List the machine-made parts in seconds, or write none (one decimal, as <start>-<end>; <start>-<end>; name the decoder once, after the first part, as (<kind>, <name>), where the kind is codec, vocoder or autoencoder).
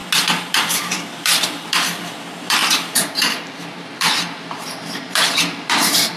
0.7-6.2 (vocoder, BigVGAN v2)